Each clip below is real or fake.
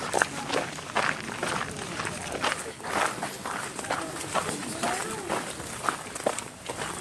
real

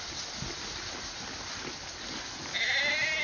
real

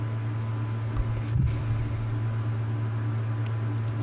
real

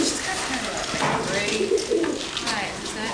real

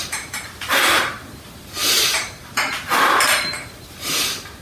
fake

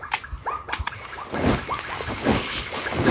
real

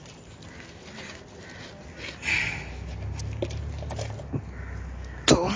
real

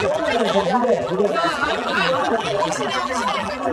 fake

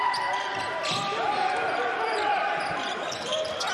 real